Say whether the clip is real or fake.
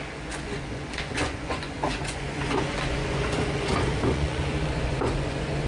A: fake